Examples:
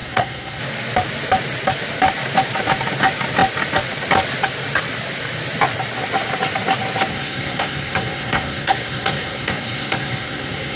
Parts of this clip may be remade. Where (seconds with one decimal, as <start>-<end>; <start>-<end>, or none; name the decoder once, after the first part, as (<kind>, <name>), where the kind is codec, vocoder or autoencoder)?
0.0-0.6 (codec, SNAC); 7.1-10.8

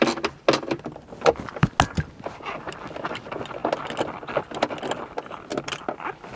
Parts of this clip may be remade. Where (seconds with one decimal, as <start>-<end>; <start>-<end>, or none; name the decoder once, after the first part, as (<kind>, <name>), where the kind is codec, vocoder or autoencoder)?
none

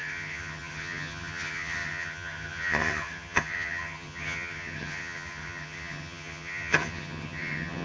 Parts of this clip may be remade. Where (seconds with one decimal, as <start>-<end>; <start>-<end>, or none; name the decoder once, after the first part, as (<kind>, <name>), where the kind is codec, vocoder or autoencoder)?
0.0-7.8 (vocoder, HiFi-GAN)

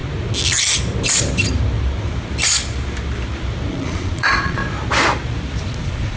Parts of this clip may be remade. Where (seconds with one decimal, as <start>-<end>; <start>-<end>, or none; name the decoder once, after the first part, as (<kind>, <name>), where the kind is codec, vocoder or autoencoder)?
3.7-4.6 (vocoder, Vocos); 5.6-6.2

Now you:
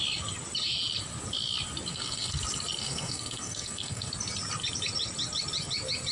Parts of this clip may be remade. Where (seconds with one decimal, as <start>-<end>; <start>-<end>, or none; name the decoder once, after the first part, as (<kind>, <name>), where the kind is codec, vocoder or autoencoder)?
1.9-2.4 (codec, SNAC); 2.8-4.1

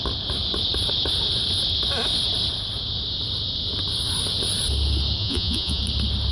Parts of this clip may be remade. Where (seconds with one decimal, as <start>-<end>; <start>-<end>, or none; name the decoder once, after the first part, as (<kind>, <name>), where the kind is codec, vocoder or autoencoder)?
5.2-5.8 (vocoder, Vocos)